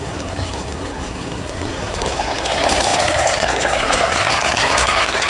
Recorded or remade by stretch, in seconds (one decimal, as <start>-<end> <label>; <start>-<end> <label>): 0.0-5.3 remade